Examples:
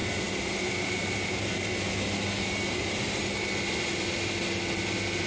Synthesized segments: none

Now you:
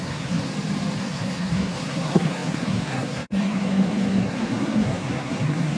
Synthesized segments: 0.0-0.5; 1.0-5.8

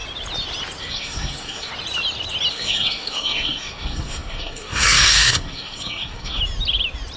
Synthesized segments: 0.8-1.7; 2.5-6.4

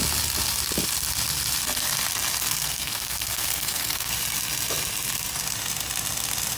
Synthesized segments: 2.6-4.1

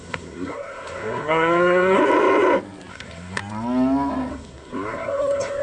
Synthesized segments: 0.0-2.0; 2.9-3.4; 4.3-5.6